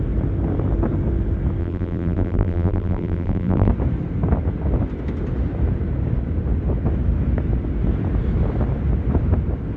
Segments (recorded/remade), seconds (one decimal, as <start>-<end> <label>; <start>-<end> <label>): 0.0-1.6 recorded; 1.6-3.7 remade; 3.7-9.8 recorded